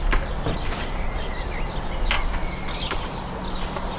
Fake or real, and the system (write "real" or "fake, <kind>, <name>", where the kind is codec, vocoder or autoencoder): real